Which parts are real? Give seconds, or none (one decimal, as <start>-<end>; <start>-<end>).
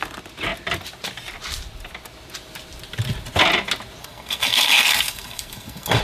0.0-4.0